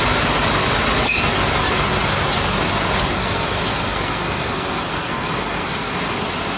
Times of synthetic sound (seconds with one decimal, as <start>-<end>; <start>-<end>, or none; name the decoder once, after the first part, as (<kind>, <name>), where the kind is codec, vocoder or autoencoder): 3.2-6.0 (codec, SNAC)

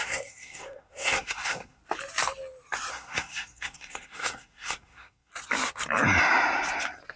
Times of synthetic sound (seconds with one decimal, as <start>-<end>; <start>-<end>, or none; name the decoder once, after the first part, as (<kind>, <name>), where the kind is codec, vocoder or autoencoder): 0.0-1.8 (codec, SNAC); 2.9-5.3

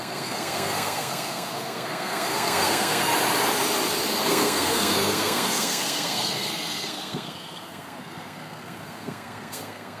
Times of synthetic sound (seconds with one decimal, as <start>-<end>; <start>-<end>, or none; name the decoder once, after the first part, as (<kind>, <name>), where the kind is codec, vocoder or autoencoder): 0.0-3.1 (codec, SNAC); 4.3-10.0